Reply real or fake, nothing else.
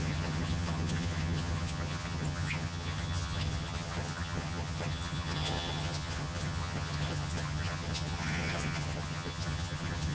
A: fake